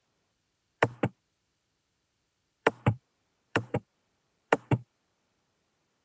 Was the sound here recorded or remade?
remade